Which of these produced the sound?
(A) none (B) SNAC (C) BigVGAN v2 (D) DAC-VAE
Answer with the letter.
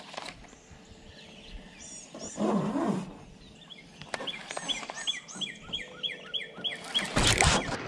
A